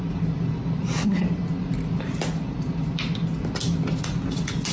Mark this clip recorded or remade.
recorded